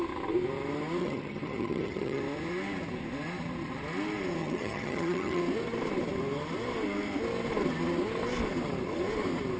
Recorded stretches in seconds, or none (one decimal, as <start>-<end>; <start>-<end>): 0.0-1.0; 2.2-4.4; 5.4-9.6